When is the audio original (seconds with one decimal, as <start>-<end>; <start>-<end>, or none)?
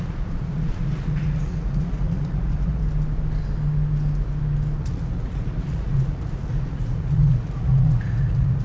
2.8-4.8